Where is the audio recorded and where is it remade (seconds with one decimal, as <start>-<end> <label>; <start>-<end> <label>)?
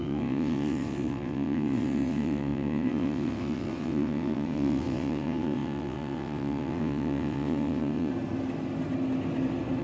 0.0-8.1 remade; 8.1-9.8 recorded